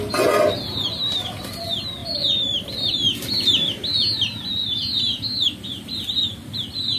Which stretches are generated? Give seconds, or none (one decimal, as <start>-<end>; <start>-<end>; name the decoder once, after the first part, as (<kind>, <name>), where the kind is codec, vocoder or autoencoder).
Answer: none